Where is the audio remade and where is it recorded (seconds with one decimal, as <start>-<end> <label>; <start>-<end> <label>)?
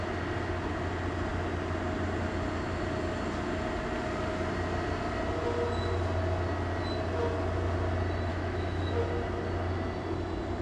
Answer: 0.0-8.3 recorded; 8.3-9.0 remade; 9.0-10.6 recorded